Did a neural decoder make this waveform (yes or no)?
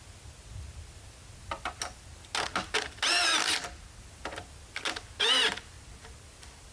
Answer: no